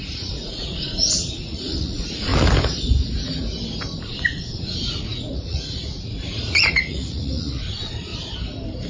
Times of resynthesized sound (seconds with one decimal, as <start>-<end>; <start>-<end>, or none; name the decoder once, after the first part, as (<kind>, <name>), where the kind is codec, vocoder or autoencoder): 0.0-2.3 (vocoder, Vocos); 4.0-8.1